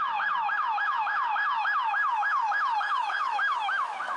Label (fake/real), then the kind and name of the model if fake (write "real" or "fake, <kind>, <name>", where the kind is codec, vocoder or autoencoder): fake, autoencoder, DAC-VAE